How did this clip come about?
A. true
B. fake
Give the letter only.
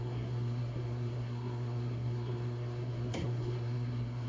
B